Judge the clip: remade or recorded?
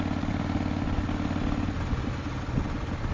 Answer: recorded